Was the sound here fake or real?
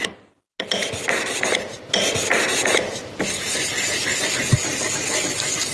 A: real